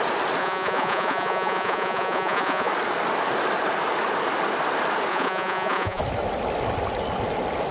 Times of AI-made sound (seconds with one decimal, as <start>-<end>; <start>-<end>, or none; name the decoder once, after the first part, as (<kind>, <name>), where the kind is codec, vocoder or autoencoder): 0.4-2.7 (vocoder, Vocos); 5.1-6.0